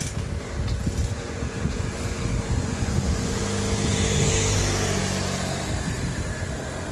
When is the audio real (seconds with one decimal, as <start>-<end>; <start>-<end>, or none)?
0.0-1.0; 3.4-6.9